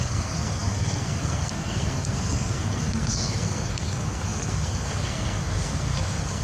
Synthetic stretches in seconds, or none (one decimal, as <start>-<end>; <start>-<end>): 0.0-6.4